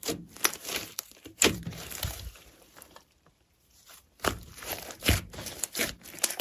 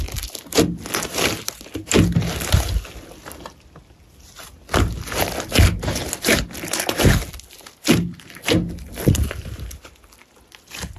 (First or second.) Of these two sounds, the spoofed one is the first